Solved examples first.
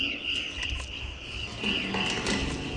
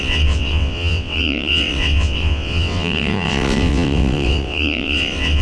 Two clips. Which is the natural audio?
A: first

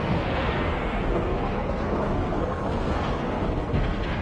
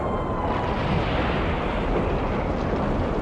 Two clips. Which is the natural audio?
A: second